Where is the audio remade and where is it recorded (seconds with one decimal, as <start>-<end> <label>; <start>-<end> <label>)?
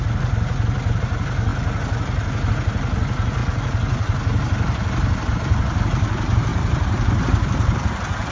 0.0-6.5 recorded; 6.5-8.3 remade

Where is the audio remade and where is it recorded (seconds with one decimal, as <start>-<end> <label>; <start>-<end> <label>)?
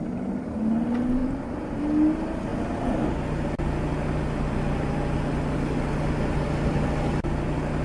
0.0-1.2 recorded; 1.2-1.8 remade; 1.8-7.8 recorded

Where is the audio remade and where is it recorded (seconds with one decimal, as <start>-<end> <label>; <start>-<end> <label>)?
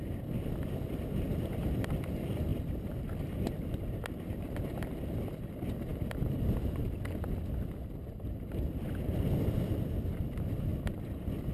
0.0-11.5 remade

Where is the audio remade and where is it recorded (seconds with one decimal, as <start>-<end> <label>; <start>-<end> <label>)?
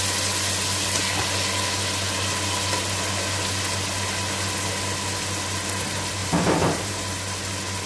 0.0-6.2 recorded; 6.2-7.2 remade; 7.2-7.9 recorded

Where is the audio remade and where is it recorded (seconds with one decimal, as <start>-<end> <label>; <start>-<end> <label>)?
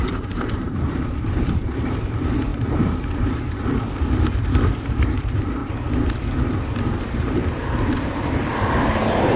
0.0-5.6 remade; 5.6-6.8 recorded; 6.8-9.4 remade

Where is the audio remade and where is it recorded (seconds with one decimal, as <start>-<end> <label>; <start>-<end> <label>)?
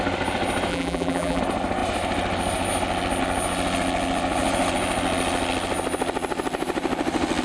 0.0-0.7 recorded; 0.7-1.4 remade; 1.4-7.4 recorded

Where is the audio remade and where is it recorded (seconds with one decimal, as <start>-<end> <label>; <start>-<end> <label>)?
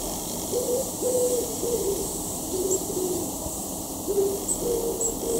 0.0-0.6 recorded; 0.6-3.8 remade; 3.8-5.4 recorded